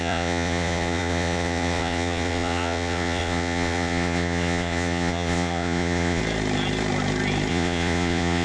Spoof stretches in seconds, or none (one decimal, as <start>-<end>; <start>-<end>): 0.0-6.2; 7.5-8.4